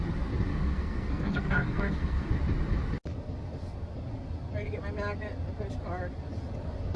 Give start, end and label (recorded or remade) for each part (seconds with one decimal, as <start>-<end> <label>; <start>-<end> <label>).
0.0-0.5 recorded; 0.5-2.3 remade; 2.3-7.0 recorded